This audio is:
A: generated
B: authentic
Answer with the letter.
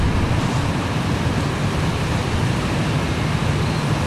B